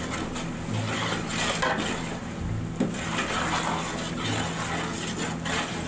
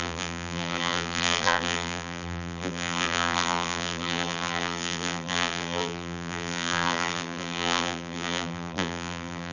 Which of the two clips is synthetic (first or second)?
second